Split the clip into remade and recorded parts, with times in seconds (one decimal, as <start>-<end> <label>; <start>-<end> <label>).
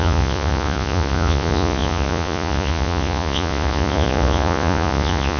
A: 0.0-5.4 remade